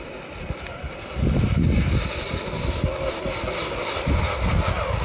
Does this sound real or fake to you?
real